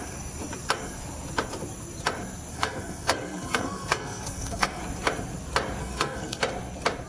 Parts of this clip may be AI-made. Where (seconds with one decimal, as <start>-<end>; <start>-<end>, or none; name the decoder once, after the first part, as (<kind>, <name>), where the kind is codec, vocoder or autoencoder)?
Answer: 2.5-4.8 (codec, SNAC); 5.8-6.4